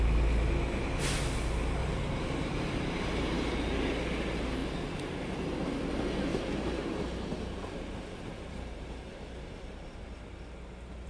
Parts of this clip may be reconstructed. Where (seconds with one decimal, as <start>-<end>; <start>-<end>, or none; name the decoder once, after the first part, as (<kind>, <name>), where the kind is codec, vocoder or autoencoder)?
1.8-3.5 (vocoder, BigVGAN v2); 4.6-5.2; 6.3-10.0